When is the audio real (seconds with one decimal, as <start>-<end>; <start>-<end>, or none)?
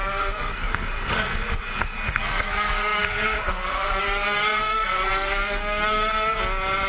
6.1-6.9